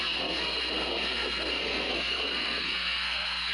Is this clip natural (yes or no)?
no